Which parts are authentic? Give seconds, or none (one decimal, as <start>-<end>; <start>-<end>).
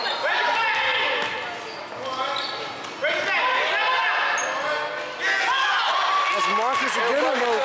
0.0-7.6